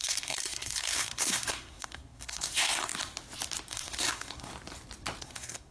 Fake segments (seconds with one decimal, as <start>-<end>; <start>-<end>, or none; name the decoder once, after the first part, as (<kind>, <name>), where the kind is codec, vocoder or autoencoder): 0.0-2.9 (codec, SNAC); 3.7-4.5; 5.2-5.7